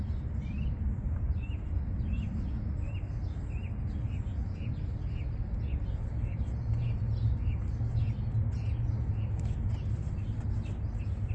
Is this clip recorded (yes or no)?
yes